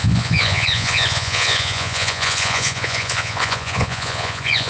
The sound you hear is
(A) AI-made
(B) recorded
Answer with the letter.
A